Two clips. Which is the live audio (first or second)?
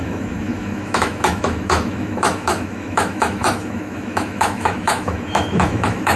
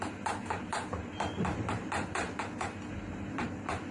second